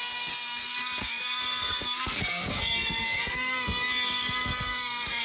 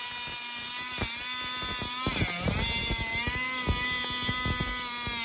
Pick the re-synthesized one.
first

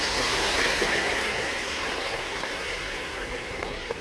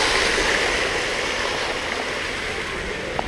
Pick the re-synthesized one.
first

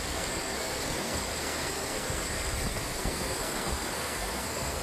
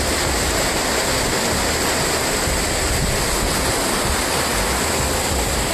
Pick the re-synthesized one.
first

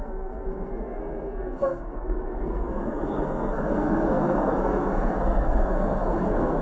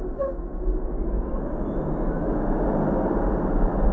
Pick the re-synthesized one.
first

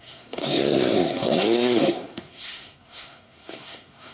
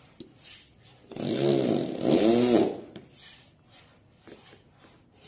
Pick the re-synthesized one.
first